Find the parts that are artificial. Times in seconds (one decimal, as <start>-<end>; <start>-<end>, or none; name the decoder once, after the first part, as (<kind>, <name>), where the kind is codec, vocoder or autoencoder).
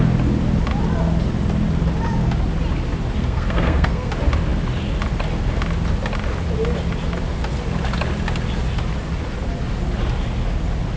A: 3.2-4.1 (codec, SNAC)